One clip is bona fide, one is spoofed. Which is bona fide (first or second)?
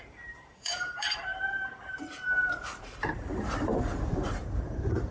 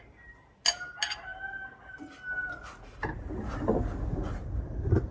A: second